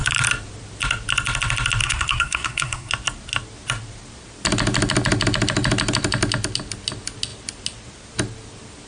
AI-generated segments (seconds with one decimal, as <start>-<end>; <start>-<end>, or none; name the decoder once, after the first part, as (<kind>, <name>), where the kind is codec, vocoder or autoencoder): 1.8-2.9 (codec, SNAC)